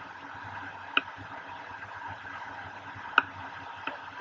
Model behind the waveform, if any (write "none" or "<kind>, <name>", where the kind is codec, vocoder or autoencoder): none